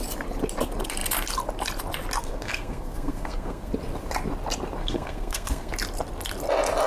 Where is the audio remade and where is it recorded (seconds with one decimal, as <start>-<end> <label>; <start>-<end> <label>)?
0.0-2.2 recorded; 2.2-3.7 remade; 3.7-4.8 recorded; 4.8-5.7 remade; 5.7-6.9 recorded